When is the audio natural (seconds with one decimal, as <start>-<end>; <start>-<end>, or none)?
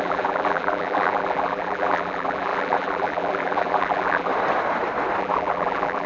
4.3-5.2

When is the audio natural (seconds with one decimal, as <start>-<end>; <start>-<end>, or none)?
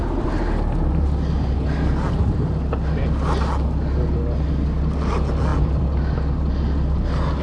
0.0-7.4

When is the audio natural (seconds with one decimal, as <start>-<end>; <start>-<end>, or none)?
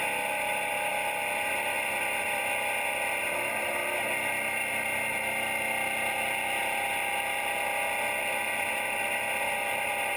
3.8-8.7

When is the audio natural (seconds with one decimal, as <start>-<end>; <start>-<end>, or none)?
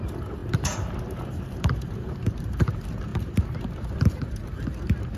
none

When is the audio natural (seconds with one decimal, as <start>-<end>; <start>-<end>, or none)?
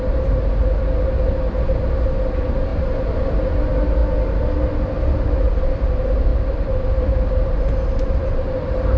0.0-2.7; 3.6-6.3; 8.2-9.0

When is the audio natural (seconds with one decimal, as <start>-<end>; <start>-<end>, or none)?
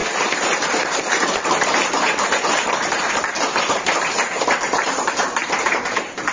none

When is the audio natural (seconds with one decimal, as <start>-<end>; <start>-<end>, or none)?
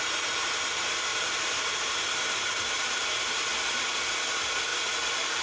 0.0-1.1; 4.0-5.4